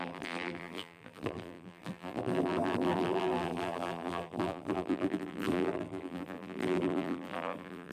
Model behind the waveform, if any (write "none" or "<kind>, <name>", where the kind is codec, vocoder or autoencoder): vocoder, BigVGAN v2